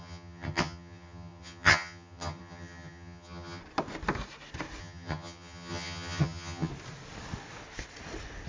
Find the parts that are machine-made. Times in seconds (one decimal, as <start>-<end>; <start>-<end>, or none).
0.0-3.6; 4.8-6.7